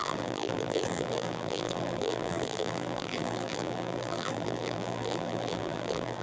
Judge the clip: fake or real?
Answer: fake